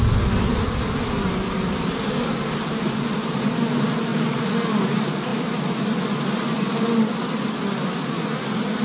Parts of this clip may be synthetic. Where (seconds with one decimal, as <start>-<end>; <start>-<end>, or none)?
0.5-2.1; 4.1-4.7